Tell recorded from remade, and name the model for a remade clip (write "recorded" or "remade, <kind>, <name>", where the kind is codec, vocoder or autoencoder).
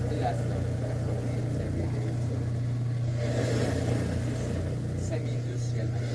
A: recorded